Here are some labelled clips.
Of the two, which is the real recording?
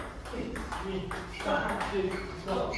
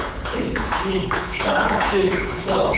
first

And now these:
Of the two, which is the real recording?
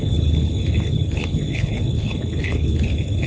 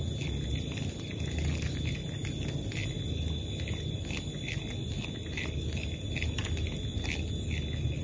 second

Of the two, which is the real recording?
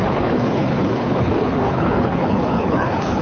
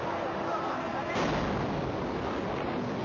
second